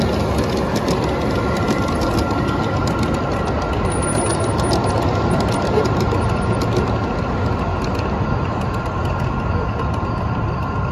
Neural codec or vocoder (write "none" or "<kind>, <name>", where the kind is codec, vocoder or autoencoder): none